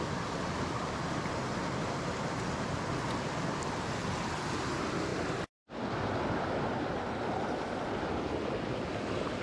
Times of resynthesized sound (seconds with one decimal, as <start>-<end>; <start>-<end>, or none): none